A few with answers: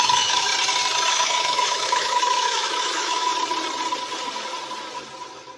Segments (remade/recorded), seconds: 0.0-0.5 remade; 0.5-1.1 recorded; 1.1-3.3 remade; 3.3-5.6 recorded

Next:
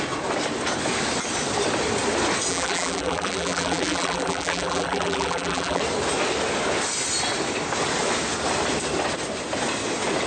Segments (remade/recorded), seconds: 0.0-2.5 recorded; 2.5-5.8 remade; 5.8-10.3 recorded

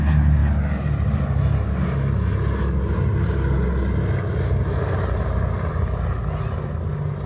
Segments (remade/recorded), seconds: 0.0-7.3 recorded

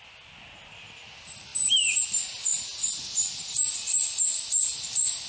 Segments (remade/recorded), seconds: 0.0-5.3 recorded

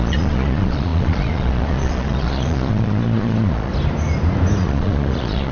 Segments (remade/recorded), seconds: 0.0-3.7 remade; 3.7-4.6 recorded; 4.6-5.5 remade

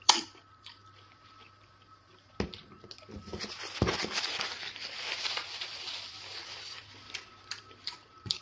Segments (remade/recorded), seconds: 0.0-0.8 remade; 0.8-4.0 recorded; 4.0-4.8 remade; 4.8-7.6 recorded; 7.6-8.4 remade

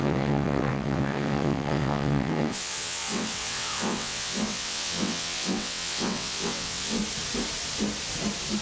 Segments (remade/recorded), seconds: 0.0-7.0 remade; 7.0-8.6 recorded